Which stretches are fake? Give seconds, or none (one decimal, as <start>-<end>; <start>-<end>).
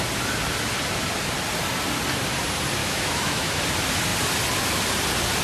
2.8-3.6